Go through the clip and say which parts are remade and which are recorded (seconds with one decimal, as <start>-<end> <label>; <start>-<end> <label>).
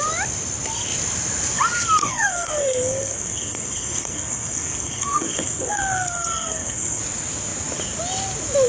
0.0-2.0 recorded; 2.0-7.0 remade; 7.0-8.7 recorded